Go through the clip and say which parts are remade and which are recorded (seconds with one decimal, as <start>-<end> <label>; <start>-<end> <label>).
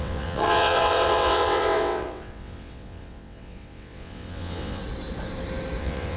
0.0-4.8 remade; 4.8-5.8 recorded; 5.8-6.2 remade